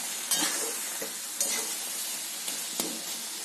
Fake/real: real